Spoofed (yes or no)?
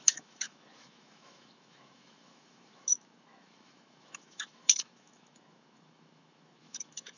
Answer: yes